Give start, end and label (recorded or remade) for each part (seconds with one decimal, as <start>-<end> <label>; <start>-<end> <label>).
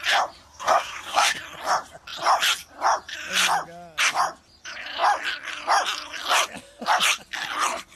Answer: 0.0-0.4 recorded; 0.4-1.4 remade; 1.4-8.0 recorded